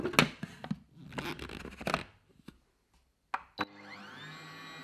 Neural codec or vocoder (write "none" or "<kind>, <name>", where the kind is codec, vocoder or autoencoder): none